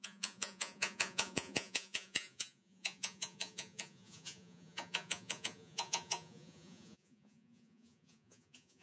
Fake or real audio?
fake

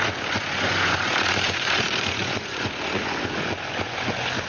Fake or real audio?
fake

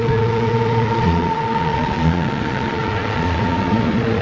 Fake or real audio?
fake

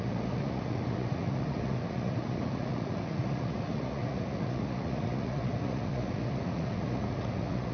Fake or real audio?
fake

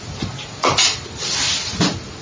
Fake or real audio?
real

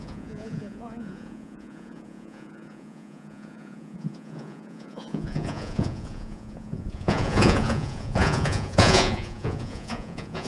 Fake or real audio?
fake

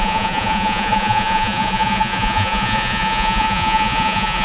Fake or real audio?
fake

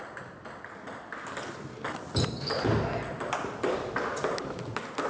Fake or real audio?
real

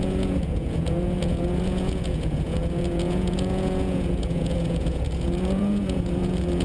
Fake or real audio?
fake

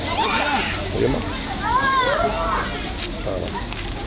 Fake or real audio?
real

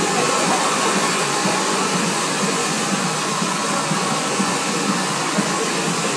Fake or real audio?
fake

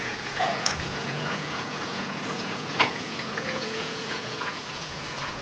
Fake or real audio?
fake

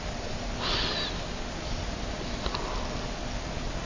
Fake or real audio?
real